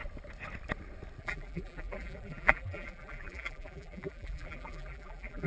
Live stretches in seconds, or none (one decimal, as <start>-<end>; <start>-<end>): 0.0-1.2